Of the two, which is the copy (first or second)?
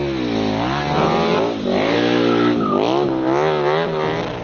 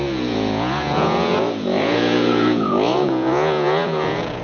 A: second